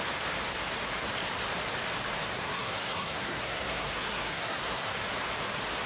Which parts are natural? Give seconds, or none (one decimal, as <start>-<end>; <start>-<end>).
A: 0.0-2.3; 5.0-5.9